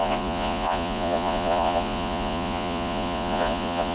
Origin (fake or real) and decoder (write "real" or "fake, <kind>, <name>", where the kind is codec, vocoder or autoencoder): fake, vocoder, Vocos